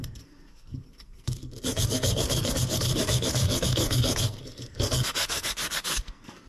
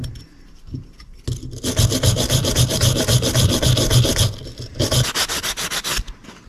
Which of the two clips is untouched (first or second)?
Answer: second